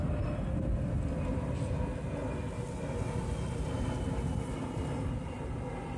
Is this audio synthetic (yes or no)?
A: no